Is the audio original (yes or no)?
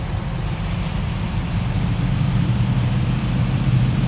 no